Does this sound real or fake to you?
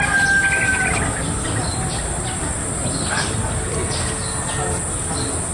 real